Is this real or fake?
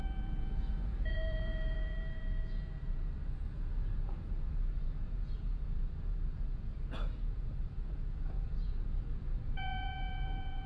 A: fake